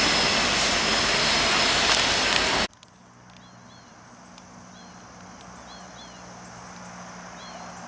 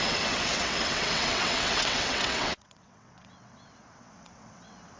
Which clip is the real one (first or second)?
first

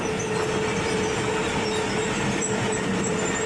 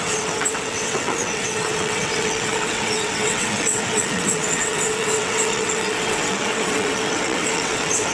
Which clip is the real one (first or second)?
first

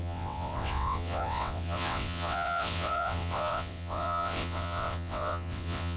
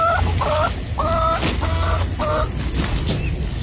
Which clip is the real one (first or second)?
second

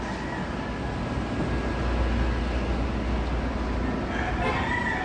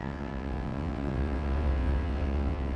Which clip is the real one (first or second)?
first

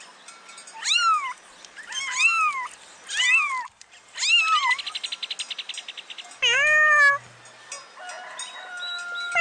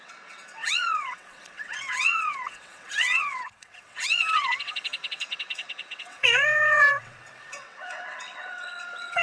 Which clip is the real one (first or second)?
first